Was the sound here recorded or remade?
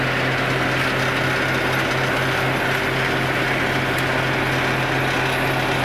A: recorded